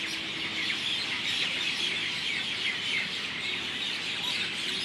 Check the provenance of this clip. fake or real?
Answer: real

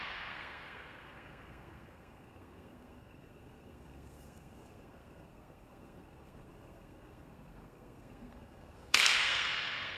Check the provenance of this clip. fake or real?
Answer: fake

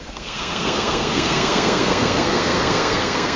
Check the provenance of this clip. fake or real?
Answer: fake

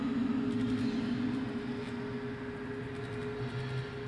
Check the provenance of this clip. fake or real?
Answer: real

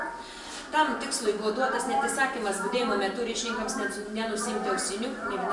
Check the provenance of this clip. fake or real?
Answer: real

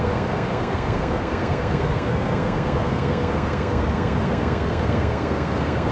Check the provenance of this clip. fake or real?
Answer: fake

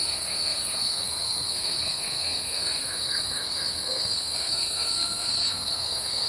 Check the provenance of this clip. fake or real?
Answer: fake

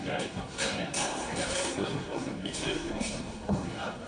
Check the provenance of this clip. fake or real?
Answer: fake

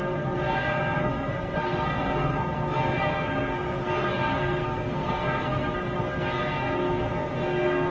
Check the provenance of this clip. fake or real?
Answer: fake